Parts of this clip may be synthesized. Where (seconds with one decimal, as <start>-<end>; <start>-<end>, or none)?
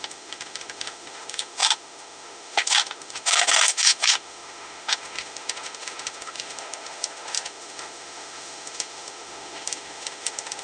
0.0-10.6